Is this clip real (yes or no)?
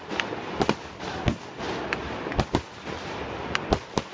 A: yes